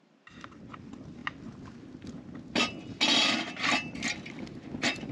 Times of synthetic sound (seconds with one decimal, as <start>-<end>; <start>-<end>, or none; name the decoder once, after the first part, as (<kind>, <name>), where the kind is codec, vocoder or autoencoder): none